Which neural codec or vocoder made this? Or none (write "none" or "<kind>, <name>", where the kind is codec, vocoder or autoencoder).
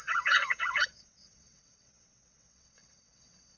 vocoder, WaveNeXt